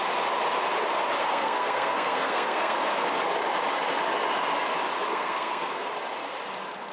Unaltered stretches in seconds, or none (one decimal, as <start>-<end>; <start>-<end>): 0.0-1.2; 3.0-5.1; 5.9-6.9